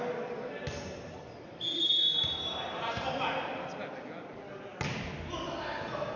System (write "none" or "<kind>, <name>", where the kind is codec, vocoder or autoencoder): none